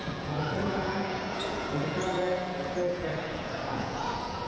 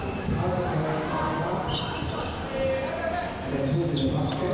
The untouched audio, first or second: second